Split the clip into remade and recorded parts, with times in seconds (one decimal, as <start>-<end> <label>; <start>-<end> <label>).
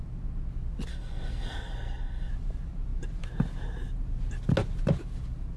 0.0-0.9 recorded; 0.9-2.3 remade; 2.3-5.6 recorded